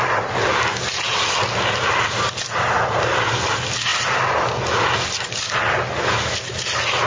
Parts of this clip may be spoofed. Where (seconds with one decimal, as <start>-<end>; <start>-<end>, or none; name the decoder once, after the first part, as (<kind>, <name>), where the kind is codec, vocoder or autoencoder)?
none